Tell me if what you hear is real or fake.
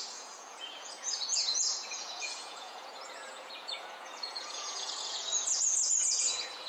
fake